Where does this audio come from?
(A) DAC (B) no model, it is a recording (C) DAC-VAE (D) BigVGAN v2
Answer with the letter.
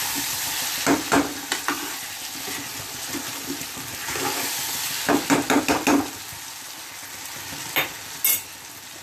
B